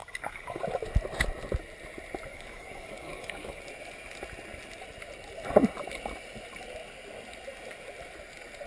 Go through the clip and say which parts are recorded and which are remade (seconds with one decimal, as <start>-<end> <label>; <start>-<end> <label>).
0.0-0.6 remade; 0.6-2.3 recorded; 2.3-3.6 remade; 3.6-8.7 recorded